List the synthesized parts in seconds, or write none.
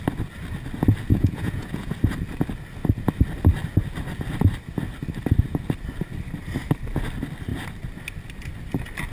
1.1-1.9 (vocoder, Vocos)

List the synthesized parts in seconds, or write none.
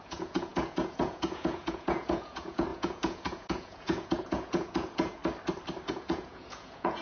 0.0-5.2 (vocoder, Vocos); 5.9-7.0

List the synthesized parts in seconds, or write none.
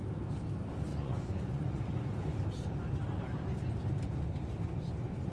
0.9-1.8 (vocoder, Vocos)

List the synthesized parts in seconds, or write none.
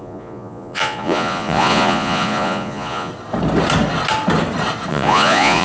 0.0-3.1 (vocoder, Vocos); 4.9-5.6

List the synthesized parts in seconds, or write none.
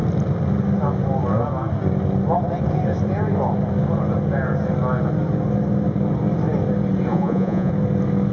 7.1-7.7 (vocoder, Vocos)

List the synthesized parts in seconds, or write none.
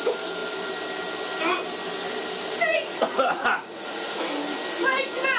2.7-4.3 (vocoder, Vocos)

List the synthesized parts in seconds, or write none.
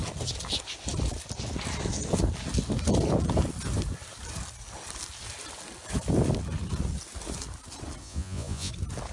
8.0-8.7 (vocoder, Vocos)